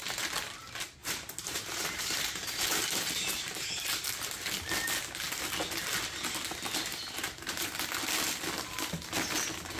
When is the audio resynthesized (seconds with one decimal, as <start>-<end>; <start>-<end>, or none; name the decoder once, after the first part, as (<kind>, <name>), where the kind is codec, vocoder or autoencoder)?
1.0-4.5 (vocoder, BigVGAN v2); 6.9-7.9